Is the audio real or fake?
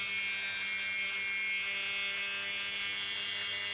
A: real